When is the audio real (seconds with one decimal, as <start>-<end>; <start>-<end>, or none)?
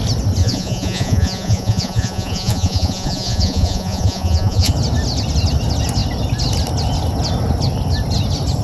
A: 0.0-0.4; 4.7-8.6